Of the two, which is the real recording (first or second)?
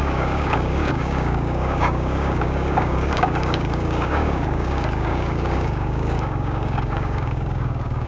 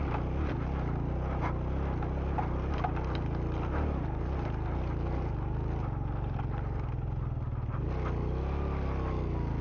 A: second